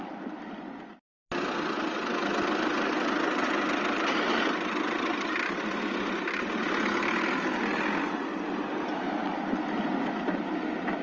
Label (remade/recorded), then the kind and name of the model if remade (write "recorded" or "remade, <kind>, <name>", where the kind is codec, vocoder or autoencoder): recorded